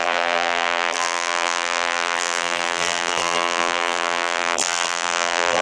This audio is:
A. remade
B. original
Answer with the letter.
A